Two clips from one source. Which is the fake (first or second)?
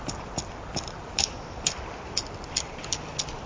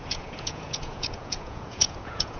second